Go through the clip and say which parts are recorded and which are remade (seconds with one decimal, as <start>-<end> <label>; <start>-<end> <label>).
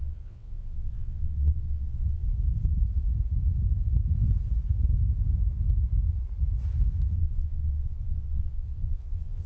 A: 0.0-2.2 remade; 2.2-7.1 recorded; 7.1-9.5 remade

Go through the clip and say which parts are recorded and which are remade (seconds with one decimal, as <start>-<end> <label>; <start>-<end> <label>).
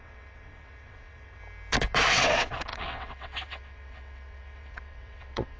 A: 0.0-1.4 remade; 1.4-2.1 recorded; 2.1-5.6 remade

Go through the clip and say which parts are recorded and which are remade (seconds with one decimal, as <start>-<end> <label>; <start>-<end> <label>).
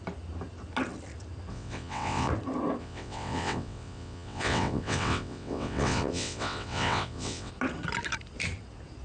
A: 0.0-1.5 recorded; 1.5-2.3 remade; 2.3-2.8 recorded; 2.8-7.5 remade; 7.5-9.0 recorded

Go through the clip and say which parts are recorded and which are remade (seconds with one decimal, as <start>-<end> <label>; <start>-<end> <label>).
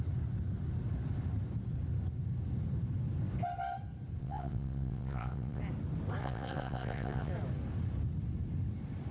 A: 0.0-4.2 recorded; 4.2-5.6 remade; 5.6-6.2 recorded; 6.2-7.3 remade; 7.3-9.1 recorded